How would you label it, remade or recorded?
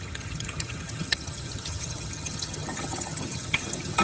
remade